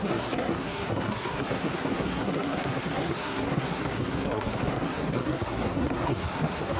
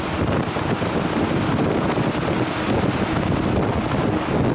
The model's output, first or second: first